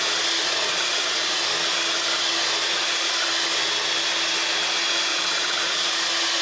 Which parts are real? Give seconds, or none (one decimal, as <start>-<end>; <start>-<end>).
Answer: 0.0-0.4; 1.4-5.1; 6.0-6.4